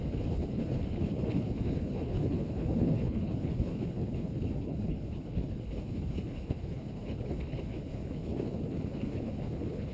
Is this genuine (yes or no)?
no